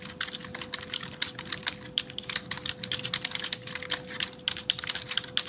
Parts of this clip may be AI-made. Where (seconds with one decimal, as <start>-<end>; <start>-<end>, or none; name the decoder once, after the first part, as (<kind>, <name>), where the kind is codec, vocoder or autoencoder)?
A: none